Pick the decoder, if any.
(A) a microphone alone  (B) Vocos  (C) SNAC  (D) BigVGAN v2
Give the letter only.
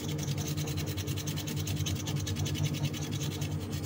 A